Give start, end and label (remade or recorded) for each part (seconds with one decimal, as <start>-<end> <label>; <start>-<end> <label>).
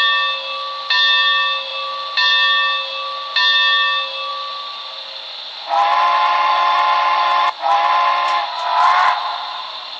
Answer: 0.0-10.0 recorded